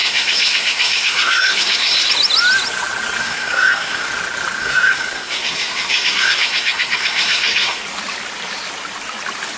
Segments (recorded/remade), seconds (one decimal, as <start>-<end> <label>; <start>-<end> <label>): 0.0-2.1 remade; 2.1-3.2 recorded; 3.2-4.1 remade; 4.1-4.6 recorded; 4.6-7.8 remade; 7.8-9.6 recorded